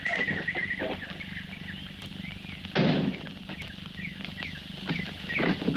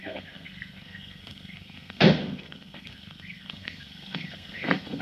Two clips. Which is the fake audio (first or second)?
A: second